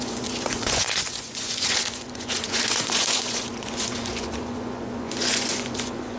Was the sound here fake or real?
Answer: fake